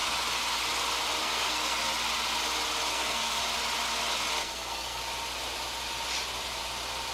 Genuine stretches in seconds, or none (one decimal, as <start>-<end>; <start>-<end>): 0.0-1.2; 1.9-2.9; 3.4-4.4; 5.0-7.1